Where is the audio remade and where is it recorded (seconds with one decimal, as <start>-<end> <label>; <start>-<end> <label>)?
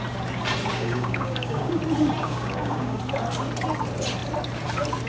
0.0-0.7 recorded; 0.7-1.8 remade; 1.8-2.2 recorded; 2.2-3.0 remade; 3.0-5.1 recorded